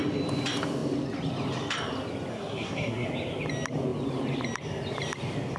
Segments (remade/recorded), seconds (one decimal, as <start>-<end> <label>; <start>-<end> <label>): 0.0-2.3 recorded; 2.3-3.1 remade; 3.1-5.6 recorded